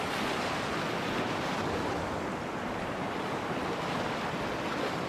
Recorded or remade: recorded